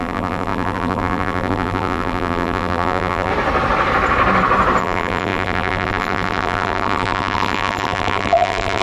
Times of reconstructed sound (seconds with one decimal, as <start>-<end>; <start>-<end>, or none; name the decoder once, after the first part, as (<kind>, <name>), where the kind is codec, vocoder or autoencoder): 0.0-3.3 (vocoder, BigVGAN v2); 4.8-8.8